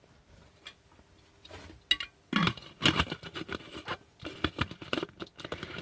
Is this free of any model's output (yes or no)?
yes